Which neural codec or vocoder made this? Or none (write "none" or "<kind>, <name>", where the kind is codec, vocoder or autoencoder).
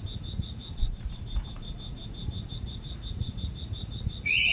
vocoder, Vocos